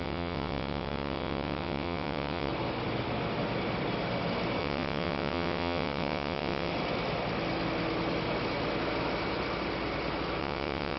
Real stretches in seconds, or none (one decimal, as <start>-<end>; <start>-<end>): 2.5-4.6; 6.7-10.4